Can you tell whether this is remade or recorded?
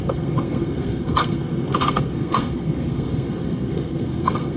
remade